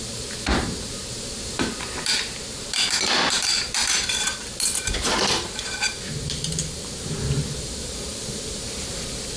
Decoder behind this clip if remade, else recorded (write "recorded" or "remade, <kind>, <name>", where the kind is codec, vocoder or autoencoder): remade, vocoder, BigVGAN v2